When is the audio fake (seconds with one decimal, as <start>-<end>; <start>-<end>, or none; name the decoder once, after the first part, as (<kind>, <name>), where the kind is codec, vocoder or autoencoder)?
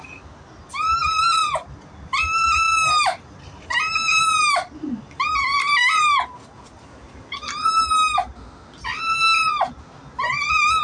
none